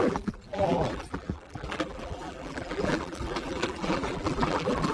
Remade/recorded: remade